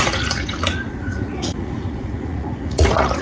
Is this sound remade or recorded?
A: remade